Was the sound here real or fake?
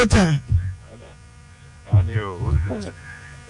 fake